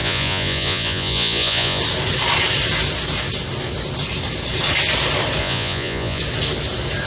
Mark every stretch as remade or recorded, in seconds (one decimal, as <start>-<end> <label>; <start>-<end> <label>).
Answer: 0.0-1.8 remade; 1.8-5.4 recorded; 5.4-6.2 remade; 6.2-7.1 recorded